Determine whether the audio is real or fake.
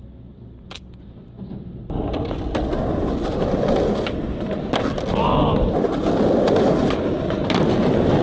real